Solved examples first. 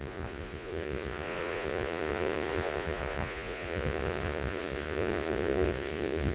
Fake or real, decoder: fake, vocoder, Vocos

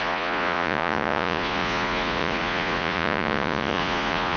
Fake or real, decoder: fake, vocoder, Vocos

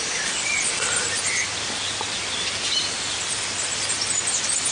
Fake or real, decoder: real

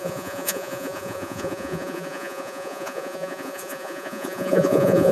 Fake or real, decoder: fake, vocoder, Vocos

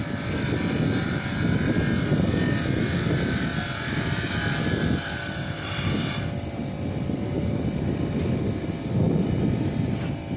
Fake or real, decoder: real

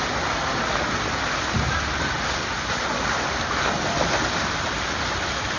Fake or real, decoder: real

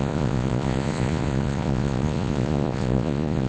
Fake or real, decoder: fake, vocoder, Vocos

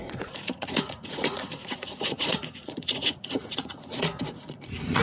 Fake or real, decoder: fake, vocoder, Vocos